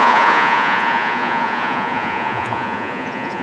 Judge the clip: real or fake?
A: fake